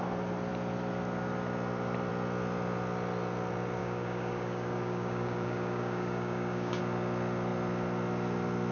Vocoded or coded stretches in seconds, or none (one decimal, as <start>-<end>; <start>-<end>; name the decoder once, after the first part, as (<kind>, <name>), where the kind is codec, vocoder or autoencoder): 3.8-6.8 (codec, DAC)